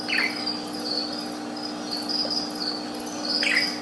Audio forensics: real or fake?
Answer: real